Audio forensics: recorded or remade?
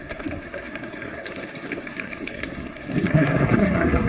remade